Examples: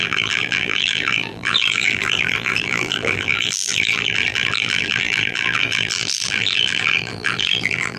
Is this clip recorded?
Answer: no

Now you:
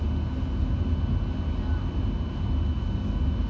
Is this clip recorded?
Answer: yes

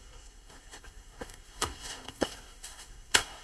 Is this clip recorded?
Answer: no